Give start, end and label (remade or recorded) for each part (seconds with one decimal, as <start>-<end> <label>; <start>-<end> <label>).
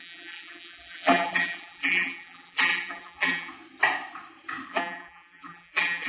0.0-3.5 remade; 3.5-4.7 recorded; 4.7-6.1 remade